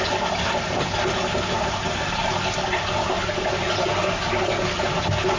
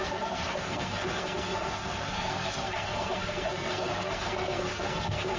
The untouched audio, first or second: first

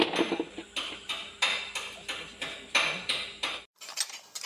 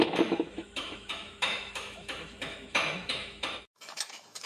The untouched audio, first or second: first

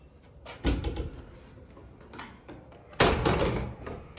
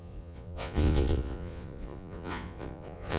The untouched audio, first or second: first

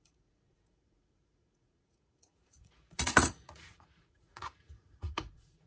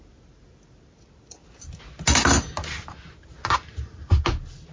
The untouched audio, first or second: second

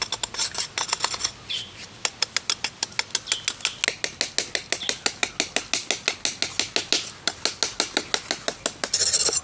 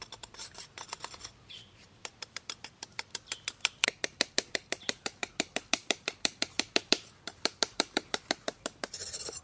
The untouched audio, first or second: first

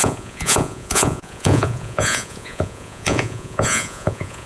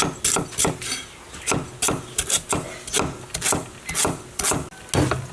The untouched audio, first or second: second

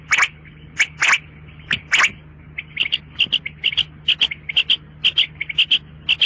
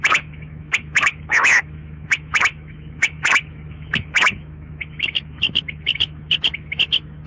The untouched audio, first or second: first